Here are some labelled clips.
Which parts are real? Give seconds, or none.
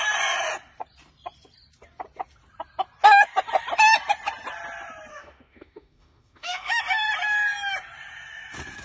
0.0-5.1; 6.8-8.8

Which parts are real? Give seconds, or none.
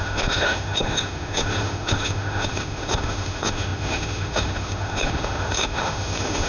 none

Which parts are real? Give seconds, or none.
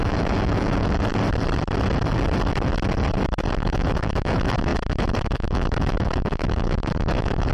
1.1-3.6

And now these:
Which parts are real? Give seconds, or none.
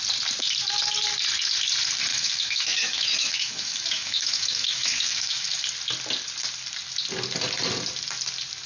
0.0-2.1; 5.6-8.7